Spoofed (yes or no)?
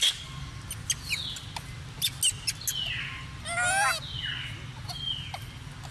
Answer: no